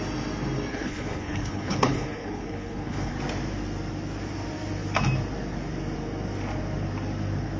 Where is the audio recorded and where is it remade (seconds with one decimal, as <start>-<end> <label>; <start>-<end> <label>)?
0.0-0.7 recorded; 0.7-3.1 remade; 3.1-7.6 recorded